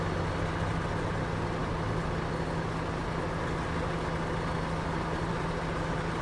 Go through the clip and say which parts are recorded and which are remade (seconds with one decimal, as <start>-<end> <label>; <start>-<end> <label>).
0.0-6.2 recorded